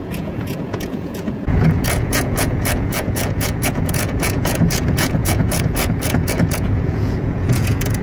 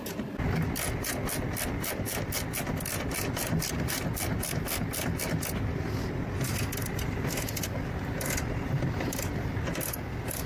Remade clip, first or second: first